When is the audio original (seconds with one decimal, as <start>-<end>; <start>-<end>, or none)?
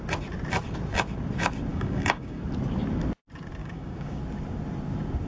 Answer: 0.0-1.7; 2.4-3.6; 4.2-5.3